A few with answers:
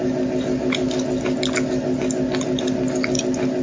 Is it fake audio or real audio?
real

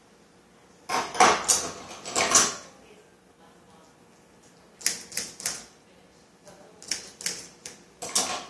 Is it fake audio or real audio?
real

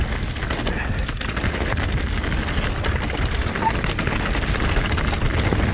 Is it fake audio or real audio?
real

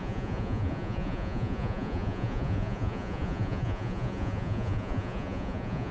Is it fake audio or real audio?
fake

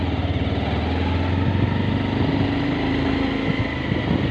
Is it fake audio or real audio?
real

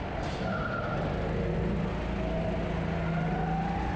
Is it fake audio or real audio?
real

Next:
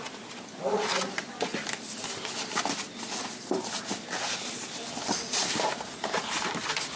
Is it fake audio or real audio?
real